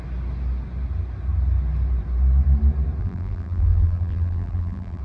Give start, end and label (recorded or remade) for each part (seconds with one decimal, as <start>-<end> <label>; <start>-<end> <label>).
0.0-3.0 recorded; 3.0-5.0 remade